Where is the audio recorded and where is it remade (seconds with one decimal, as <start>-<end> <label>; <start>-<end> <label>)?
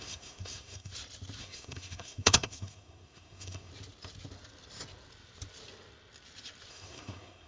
0.0-0.9 remade; 0.9-1.4 recorded; 1.4-3.7 remade; 3.7-6.7 recorded; 6.7-7.5 remade